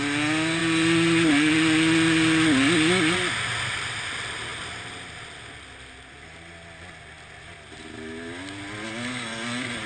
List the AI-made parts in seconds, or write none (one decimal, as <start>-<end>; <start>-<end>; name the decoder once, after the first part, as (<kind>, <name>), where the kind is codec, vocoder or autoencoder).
none